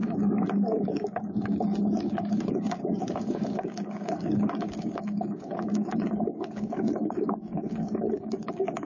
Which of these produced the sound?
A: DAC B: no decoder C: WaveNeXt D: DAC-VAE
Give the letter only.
A